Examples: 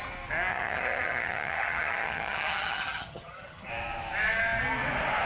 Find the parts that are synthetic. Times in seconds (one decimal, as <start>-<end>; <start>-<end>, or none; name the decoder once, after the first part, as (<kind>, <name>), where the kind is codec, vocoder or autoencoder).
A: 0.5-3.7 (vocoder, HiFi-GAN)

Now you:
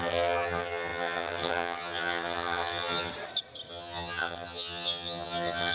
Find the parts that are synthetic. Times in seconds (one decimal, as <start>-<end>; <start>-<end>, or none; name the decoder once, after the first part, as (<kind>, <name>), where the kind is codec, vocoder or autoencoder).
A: 0.0-3.1 (vocoder, HiFi-GAN); 3.7-5.7

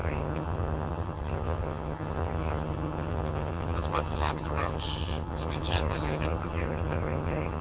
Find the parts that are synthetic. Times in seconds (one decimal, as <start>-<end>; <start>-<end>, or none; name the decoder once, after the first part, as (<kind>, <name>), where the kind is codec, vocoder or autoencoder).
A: 0.0-7.6 (vocoder, HiFi-GAN)

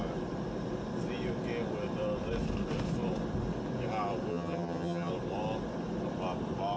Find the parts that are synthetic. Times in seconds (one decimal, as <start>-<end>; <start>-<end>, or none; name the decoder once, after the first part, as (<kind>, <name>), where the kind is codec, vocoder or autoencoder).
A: 4.3-5.1 (vocoder, HiFi-GAN)

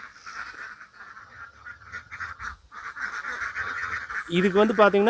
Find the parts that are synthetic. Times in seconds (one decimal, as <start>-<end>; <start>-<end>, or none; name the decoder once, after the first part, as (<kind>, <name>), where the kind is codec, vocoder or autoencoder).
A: 1.2-2.4 (vocoder, HiFi-GAN); 3.5-4.1

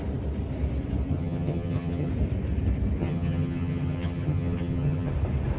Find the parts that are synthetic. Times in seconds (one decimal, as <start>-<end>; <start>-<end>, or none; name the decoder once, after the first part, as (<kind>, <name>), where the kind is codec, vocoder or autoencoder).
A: 1.1-2.1 (vocoder, HiFi-GAN); 3.0-5.1

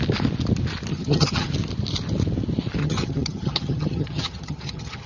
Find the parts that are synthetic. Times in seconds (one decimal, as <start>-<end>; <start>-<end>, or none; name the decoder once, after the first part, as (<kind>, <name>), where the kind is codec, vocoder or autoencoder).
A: 0.9-1.5 (vocoder, HiFi-GAN); 2.8-5.1